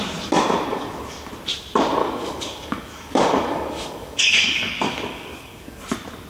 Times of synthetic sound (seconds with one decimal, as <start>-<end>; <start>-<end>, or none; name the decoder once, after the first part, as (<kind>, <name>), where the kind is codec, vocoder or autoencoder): 0.7-1.3 (codec, DAC); 2.0-5.8